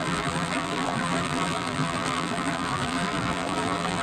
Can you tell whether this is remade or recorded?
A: remade